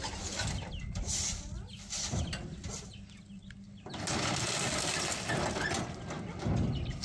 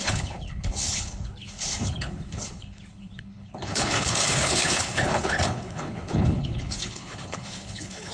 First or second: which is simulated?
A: second